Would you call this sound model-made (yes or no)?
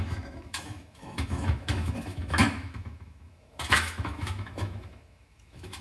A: yes